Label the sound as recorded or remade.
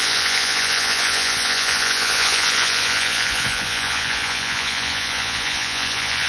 remade